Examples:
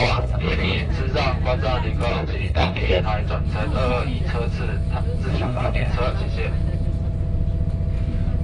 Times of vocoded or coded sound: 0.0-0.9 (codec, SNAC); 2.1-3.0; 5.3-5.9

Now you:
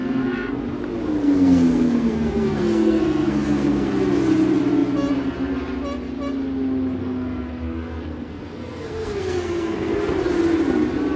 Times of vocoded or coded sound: 0.0-0.6 (codec, SNAC); 1.2-3.9; 7.0-9.9

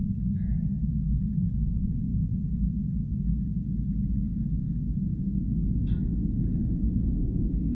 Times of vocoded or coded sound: 0.0-2.1 (autoencoder, DAC-VAE); 6.6-7.7

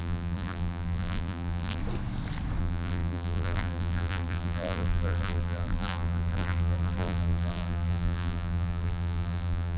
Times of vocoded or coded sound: 0.0-1.8 (vocoder, BigVGAN v2); 2.6-9.8

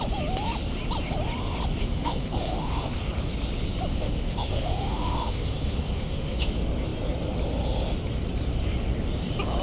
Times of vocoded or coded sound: 1.8-3.0 (autoencoder, DAC-VAE); 3.9-6.5